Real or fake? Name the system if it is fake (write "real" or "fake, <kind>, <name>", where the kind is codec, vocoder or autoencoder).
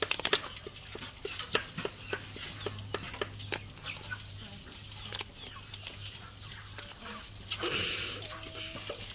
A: real